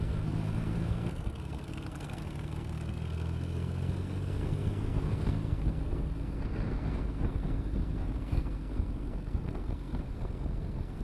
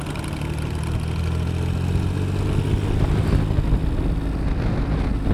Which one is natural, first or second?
second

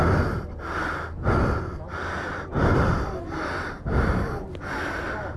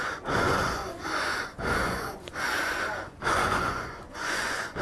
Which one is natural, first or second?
first